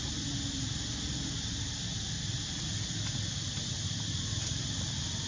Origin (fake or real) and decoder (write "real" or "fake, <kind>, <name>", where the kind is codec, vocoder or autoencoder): real